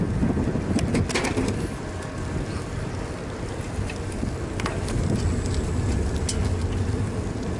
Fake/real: real